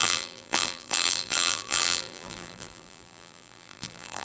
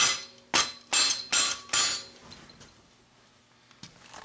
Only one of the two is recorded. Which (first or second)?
second